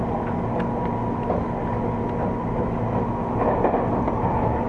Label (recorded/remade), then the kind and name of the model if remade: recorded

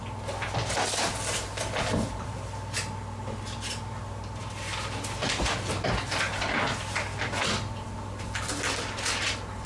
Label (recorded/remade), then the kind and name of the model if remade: recorded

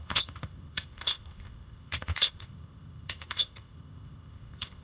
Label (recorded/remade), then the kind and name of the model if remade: remade, codec, ZipCodec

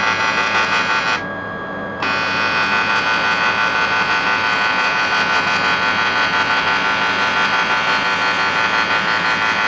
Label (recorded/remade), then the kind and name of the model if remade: recorded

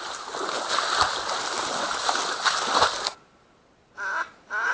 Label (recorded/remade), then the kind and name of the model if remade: recorded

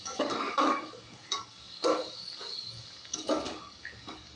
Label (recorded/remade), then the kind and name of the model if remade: remade, codec, DAC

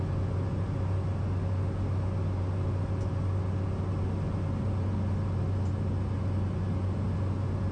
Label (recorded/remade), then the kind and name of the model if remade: recorded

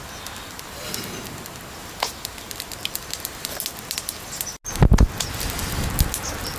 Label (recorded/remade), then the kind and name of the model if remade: recorded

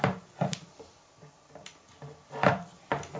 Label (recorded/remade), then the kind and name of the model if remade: recorded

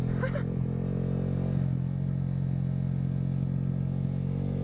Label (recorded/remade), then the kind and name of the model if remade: recorded